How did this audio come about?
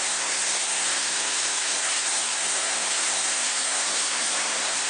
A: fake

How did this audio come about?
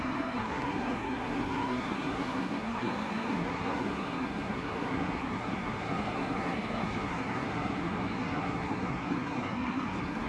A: fake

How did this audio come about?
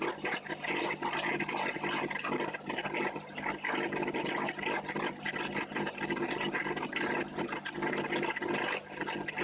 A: real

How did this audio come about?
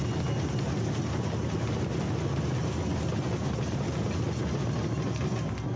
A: real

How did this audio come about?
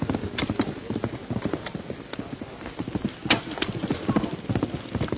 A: real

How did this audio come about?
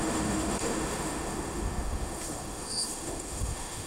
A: fake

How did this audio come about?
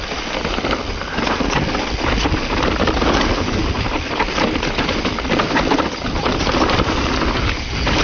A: real